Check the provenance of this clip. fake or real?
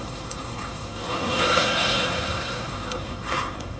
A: fake